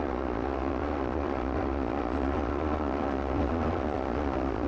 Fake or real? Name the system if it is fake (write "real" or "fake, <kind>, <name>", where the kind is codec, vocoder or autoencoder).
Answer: fake, vocoder, Vocos